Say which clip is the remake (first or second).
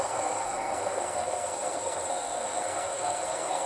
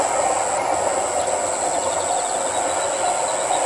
first